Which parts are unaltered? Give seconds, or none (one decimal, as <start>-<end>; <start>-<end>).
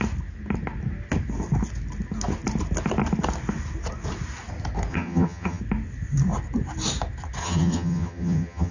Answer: 0.0-4.9; 5.6-7.4